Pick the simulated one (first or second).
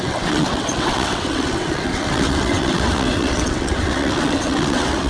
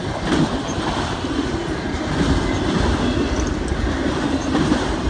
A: first